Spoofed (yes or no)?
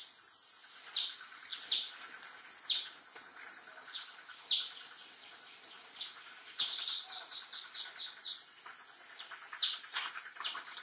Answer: no